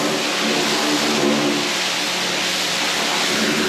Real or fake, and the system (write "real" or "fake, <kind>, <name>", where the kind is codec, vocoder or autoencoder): real